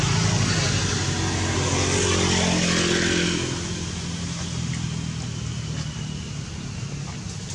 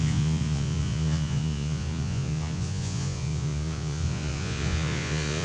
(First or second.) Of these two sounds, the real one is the first